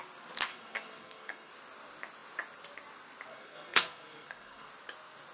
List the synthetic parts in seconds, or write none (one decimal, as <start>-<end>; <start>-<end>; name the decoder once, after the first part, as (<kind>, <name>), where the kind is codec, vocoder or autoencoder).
0.5-1.5 (codec, SNAC); 3.3-4.7